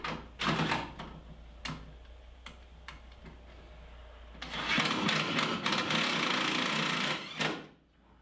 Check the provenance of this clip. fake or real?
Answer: real